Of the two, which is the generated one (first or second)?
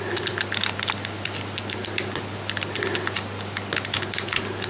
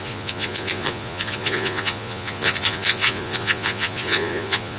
second